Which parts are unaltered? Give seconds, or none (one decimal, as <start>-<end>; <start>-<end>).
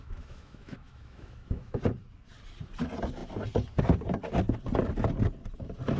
1.8-6.0